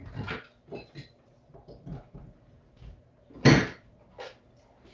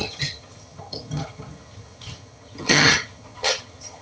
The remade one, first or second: second